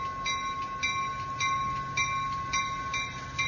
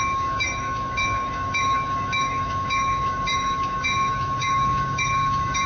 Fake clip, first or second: second